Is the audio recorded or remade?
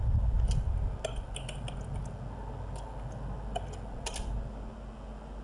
recorded